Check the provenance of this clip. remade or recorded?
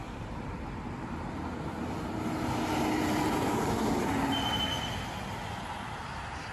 recorded